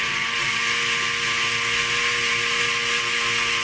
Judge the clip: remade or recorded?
recorded